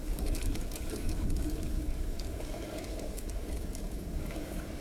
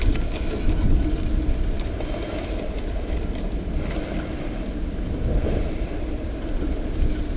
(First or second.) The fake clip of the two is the first